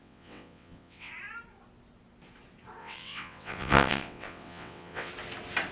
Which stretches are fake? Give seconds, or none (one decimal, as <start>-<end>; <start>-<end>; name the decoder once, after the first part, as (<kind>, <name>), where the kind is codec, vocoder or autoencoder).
0.0-1.1 (vocoder, WaveNeXt); 2.8-5.1